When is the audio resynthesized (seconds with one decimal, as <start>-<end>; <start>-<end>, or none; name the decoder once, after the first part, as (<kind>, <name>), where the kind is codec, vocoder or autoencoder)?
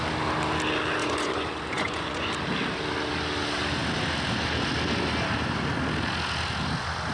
1.0-2.3 (vocoder, Vocos)